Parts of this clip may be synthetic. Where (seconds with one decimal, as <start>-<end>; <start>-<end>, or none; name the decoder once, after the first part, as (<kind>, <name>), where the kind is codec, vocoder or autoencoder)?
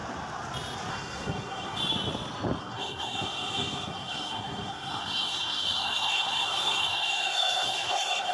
0.9-1.8 (codec, SNAC); 2.6-8.3